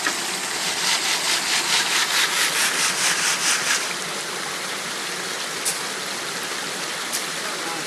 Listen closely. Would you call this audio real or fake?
real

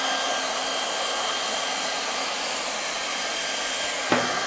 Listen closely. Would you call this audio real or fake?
real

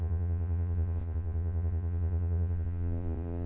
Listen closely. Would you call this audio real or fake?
fake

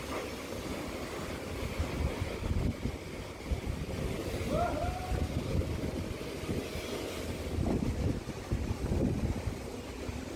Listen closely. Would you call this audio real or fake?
real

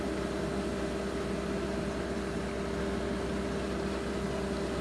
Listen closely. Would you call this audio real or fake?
real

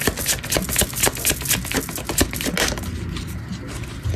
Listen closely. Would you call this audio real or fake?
real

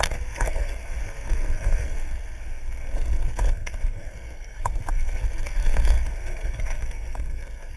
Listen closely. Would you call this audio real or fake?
fake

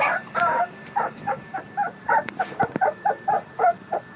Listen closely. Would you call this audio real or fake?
fake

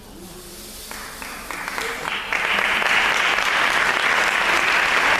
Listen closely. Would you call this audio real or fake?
real